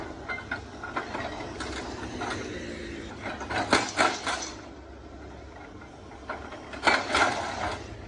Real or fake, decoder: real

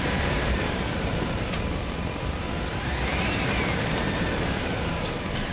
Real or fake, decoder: fake, vocoder, BigVGAN v2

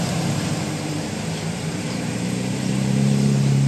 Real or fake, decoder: fake, vocoder, BigVGAN v2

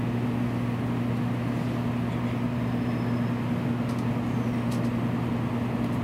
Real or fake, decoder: real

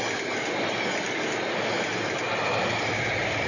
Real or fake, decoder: real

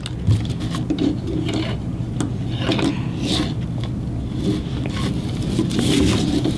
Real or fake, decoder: real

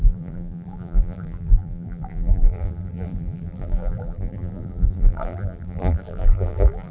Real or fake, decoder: fake, vocoder, BigVGAN v2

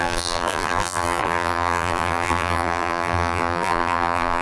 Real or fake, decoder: fake, vocoder, BigVGAN v2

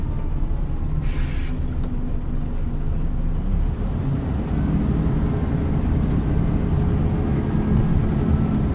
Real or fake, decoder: real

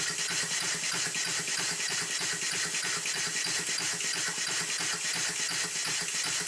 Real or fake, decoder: real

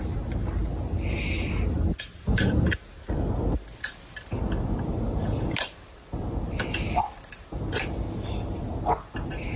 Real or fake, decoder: real